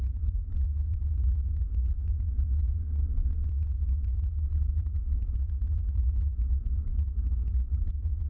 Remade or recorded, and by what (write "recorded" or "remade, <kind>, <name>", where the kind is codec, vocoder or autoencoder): remade, vocoder, Vocos